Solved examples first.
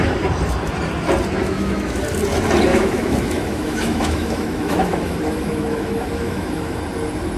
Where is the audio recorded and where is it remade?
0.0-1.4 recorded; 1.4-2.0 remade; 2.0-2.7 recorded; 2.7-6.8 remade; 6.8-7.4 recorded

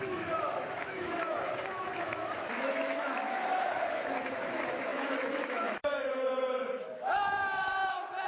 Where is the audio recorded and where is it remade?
0.0-8.3 remade

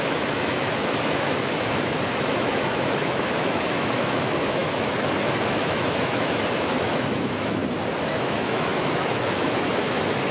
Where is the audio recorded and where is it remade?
0.0-7.6 remade; 7.6-8.2 recorded; 8.2-10.3 remade